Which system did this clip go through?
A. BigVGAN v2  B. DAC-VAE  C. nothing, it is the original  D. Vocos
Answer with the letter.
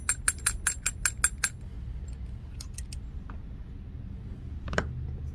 C